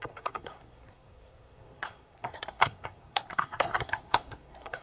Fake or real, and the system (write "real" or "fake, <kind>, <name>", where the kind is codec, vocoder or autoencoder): fake, codec, SNAC